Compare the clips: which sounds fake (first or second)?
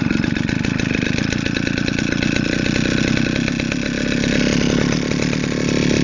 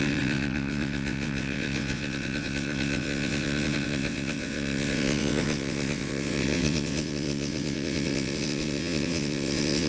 second